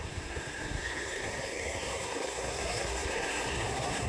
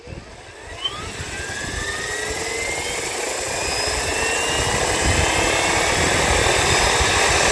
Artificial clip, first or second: first